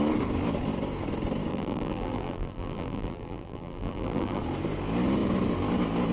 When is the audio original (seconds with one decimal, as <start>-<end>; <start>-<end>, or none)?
0.0-1.5; 4.4-6.1